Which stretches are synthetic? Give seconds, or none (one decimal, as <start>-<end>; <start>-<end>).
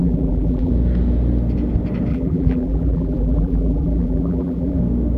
0.0-0.7; 2.1-4.8